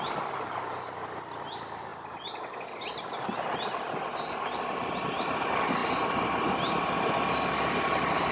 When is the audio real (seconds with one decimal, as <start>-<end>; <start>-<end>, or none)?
0.0-8.3